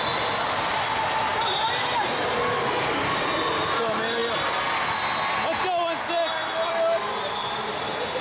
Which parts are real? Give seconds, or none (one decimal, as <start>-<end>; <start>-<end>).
0.0-8.2